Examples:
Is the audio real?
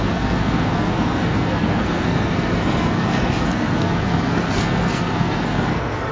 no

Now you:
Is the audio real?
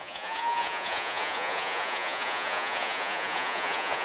no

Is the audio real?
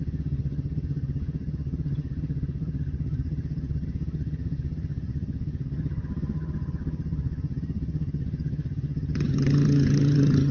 no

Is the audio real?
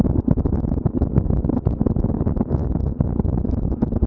yes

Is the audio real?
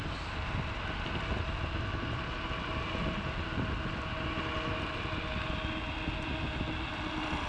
yes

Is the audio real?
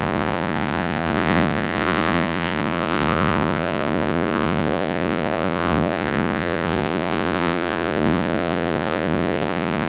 no